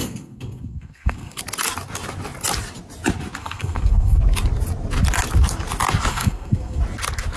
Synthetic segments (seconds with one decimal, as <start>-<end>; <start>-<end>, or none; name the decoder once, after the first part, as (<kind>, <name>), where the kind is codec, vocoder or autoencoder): 0.0-1.4 (codec, SNAC); 3.4-4.2; 6.1-6.8